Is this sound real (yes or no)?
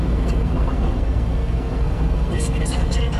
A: no